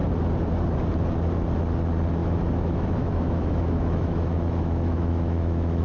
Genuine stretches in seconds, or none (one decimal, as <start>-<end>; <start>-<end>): 0.0-2.2